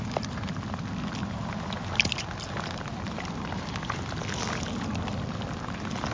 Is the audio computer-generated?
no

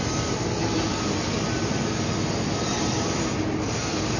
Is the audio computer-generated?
no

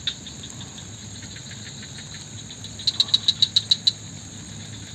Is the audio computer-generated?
no